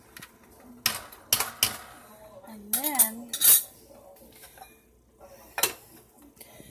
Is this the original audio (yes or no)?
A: yes